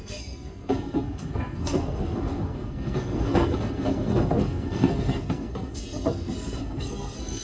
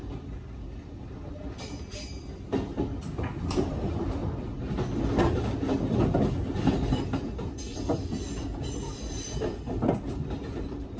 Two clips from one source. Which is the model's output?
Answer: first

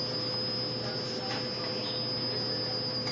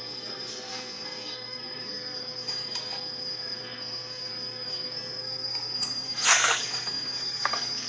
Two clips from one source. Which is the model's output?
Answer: second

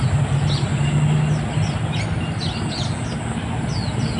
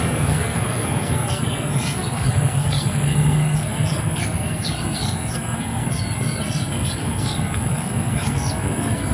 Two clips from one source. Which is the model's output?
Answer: second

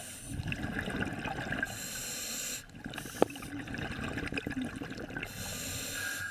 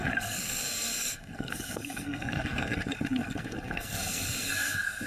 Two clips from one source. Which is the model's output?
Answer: second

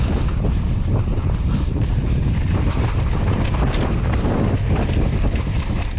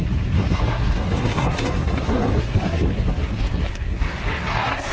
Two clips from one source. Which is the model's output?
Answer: second